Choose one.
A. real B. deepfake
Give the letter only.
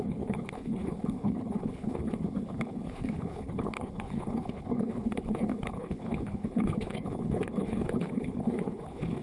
B